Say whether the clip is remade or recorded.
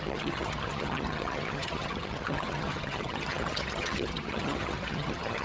remade